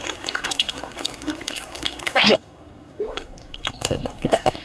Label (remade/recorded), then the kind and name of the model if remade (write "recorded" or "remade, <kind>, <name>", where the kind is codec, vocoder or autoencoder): remade, codec, SNAC